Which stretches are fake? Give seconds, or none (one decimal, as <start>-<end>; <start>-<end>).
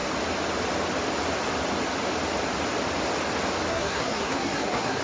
3.7-5.0